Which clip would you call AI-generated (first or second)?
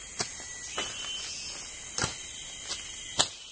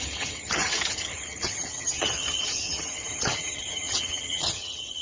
second